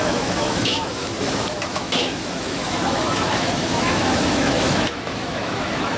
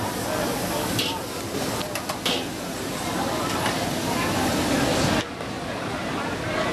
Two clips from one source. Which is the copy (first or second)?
first